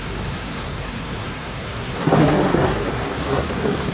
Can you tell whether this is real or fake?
fake